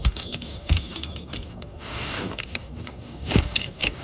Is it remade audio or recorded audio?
remade